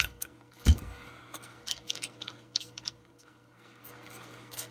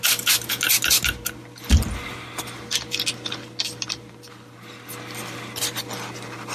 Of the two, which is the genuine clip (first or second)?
second